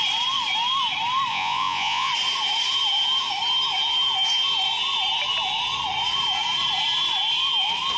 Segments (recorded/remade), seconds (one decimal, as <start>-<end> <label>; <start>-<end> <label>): 0.0-1.3 recorded; 1.3-2.1 remade; 2.1-8.0 recorded